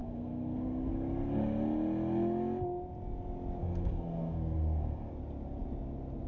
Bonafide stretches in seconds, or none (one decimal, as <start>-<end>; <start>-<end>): 0.9-3.6; 5.1-6.3